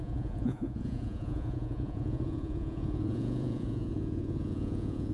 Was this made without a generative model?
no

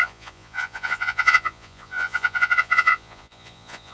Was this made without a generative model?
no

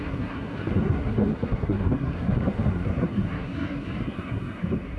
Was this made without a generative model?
no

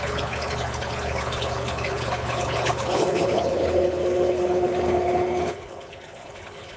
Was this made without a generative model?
no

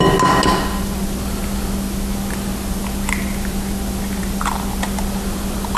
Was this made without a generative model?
yes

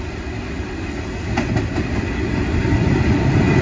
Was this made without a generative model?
yes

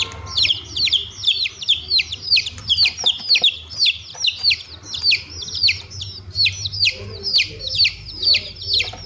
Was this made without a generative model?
no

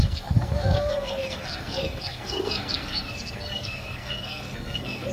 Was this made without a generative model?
no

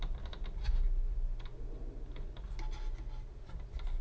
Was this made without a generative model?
yes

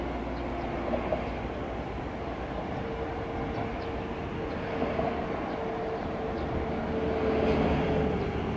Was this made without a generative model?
yes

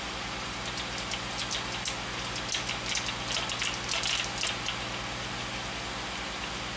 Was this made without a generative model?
yes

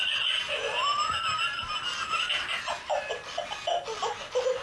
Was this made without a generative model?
yes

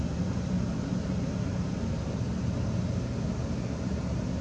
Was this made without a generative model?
yes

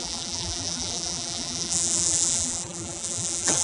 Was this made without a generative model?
no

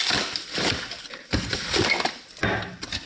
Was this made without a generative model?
yes